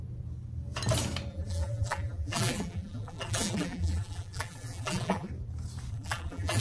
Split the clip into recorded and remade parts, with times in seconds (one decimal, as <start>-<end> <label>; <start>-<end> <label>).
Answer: 0.0-1.3 recorded; 1.3-5.3 remade; 5.3-5.9 recorded; 5.9-6.6 remade